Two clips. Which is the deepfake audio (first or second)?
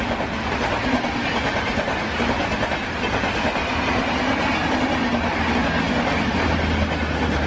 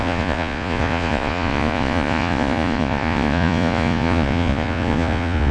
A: second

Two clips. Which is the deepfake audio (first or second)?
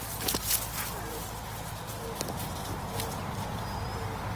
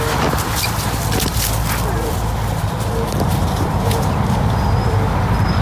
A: second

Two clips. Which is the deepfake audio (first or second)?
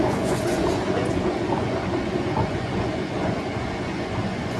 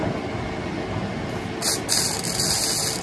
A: first